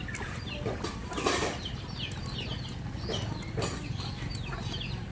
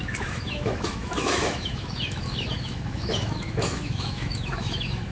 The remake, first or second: second